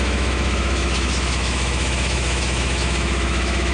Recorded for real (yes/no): no